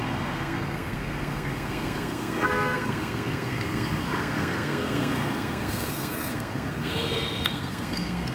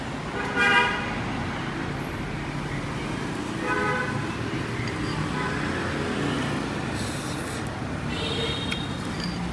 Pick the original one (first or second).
second